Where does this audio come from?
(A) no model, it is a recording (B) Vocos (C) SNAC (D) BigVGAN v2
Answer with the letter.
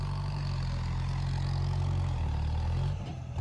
A